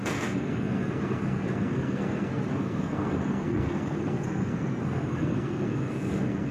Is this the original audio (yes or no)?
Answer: no